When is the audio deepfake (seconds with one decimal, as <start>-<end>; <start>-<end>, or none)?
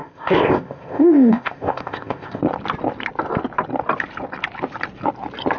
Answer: 0.0-2.4